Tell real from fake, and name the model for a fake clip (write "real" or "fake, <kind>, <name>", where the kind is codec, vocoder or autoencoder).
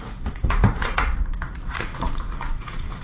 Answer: fake, vocoder, Vocos